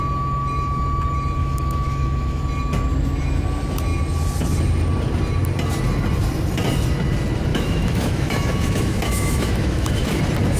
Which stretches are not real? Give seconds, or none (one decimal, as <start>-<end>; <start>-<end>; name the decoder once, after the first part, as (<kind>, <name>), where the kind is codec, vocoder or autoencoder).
1.4-2.4 (autoencoder, DAC-VAE); 7.5-10.2